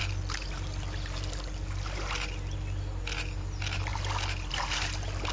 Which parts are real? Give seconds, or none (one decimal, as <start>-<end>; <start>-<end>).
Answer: 0.0-5.3